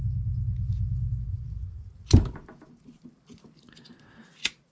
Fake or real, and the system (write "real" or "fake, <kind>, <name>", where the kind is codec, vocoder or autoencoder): real